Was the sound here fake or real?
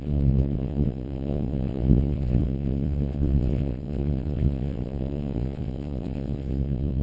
fake